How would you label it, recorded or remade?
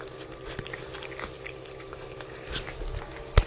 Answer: recorded